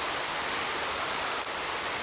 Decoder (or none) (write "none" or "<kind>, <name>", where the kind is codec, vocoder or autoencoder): none